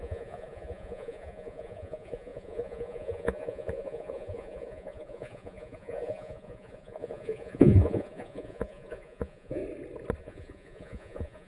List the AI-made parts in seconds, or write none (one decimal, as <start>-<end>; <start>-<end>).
0.0-9.6; 10.2-11.5

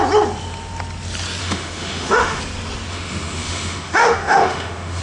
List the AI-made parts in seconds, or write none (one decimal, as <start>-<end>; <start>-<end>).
1.4-2.4; 2.9-5.0

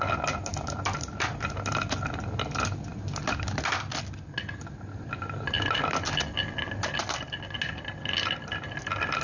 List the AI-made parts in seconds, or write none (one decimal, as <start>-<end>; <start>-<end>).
none

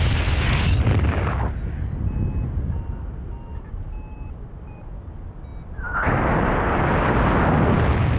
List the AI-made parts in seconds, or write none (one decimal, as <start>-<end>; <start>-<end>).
none

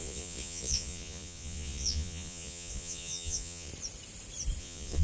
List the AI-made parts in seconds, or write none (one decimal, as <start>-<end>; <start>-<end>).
0.0-3.7; 4.6-5.0